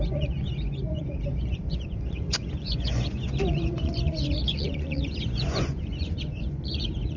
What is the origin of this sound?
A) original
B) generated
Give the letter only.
B